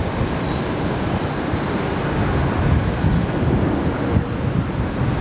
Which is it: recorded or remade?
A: recorded